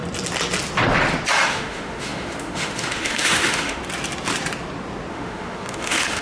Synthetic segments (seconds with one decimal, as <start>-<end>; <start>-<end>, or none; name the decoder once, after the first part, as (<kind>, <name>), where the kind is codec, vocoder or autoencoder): 1.5-3.8 (autoencoder, DAC-VAE); 5.1-6.2